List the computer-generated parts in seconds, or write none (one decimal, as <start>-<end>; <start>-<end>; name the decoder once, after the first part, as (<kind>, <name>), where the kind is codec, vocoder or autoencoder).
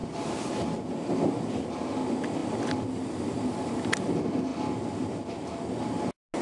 0.0-0.5 (vocoder, BigVGAN v2); 2.4-4.1